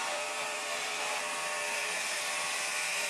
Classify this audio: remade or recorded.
remade